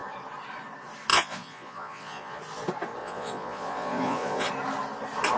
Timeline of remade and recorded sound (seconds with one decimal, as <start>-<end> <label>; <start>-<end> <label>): 0.0-1.1 recorded; 1.1-2.4 remade; 2.4-3.0 recorded; 3.0-4.5 remade; 4.5-5.4 recorded